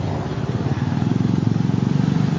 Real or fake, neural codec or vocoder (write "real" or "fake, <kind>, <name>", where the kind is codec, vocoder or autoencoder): real